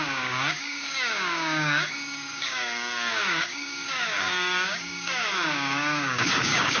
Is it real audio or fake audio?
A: fake